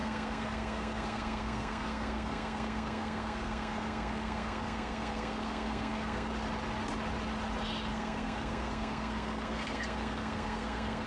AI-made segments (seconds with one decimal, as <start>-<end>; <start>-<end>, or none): 0.0-6.3; 7.9-11.1